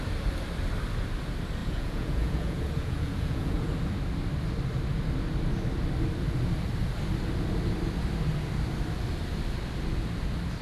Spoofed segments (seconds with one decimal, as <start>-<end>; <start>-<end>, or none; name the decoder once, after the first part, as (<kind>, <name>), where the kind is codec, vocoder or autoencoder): 1.6-3.7 (vocoder, Vocos)